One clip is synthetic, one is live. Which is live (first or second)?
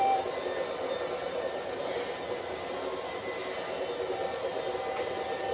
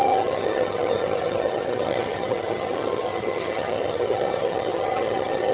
first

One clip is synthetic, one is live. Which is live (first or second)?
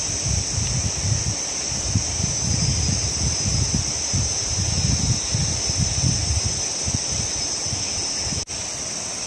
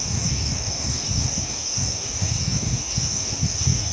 first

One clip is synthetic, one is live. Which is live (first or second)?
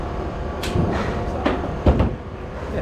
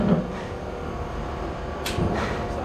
second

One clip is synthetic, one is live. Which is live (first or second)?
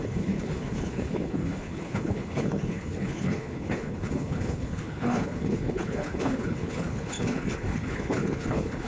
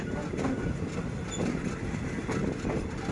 second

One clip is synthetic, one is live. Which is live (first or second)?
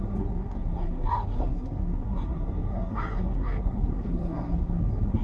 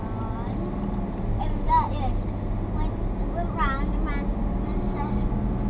second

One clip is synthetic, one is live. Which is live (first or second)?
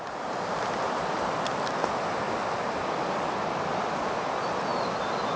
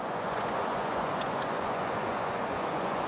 first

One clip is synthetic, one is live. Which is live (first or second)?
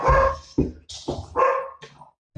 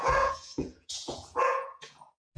first